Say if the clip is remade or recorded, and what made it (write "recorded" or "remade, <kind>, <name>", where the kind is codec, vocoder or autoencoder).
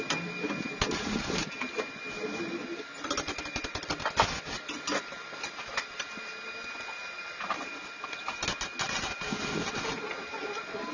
recorded